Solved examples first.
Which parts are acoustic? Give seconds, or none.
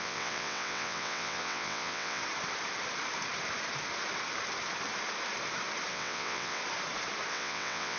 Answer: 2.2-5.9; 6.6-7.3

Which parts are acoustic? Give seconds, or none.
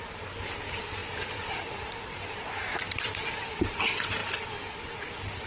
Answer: 0.0-5.5